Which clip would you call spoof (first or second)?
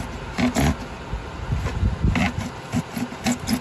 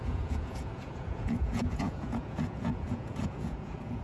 second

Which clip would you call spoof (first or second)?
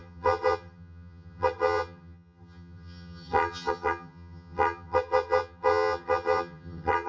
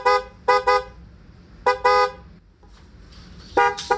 first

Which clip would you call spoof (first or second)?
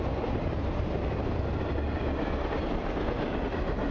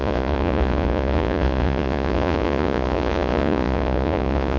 second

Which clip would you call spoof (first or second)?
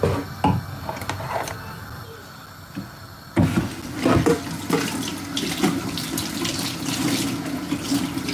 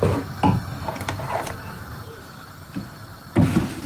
second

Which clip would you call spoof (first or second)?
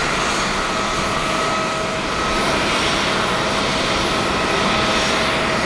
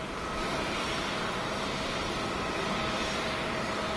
second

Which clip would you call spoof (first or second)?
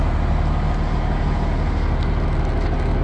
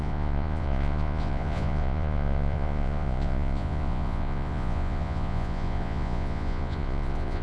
second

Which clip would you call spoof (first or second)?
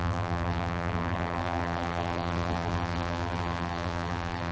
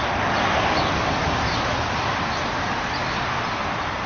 first